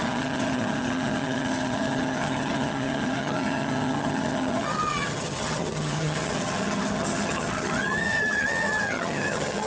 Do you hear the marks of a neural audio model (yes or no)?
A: yes